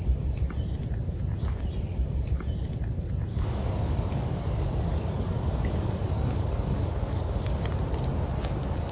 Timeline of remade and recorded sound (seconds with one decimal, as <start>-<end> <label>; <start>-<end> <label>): 0.0-3.3 recorded; 3.3-7.6 remade; 7.6-8.9 recorded